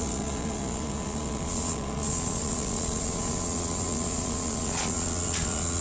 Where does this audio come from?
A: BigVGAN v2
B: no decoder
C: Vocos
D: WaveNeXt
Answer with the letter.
C